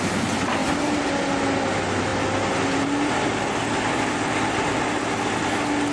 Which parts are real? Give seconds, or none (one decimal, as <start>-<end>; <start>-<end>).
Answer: 0.0-0.6; 1.1-5.9